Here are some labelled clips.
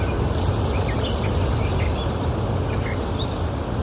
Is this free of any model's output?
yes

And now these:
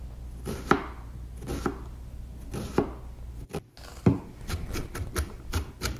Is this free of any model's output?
yes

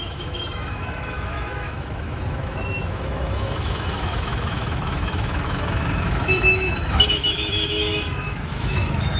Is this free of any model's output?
no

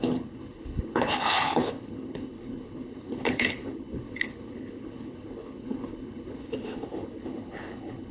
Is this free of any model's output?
no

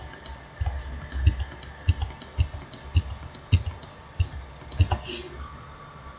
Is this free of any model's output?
yes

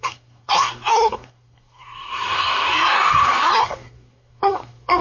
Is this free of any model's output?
no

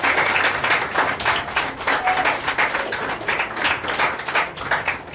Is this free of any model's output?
yes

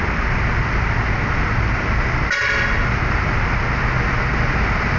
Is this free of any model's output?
yes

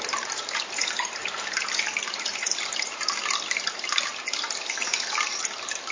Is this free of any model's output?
no